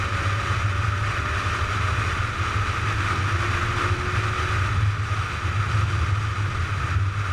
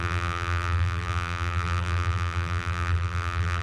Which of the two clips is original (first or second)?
first